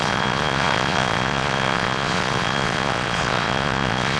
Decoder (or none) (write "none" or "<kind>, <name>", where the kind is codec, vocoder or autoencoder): vocoder, Vocos